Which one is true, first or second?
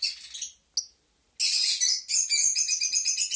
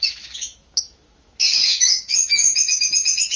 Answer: first